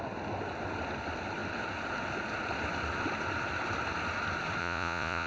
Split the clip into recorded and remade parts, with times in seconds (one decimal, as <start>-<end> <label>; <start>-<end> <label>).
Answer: 0.0-4.6 recorded; 4.6-5.3 remade